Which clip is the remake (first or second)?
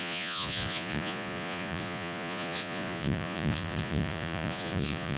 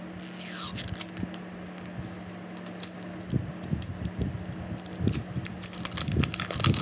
first